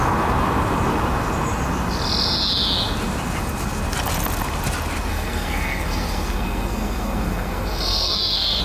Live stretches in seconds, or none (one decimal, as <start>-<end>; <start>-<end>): 0.0-5.1